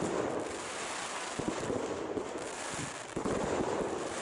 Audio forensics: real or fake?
fake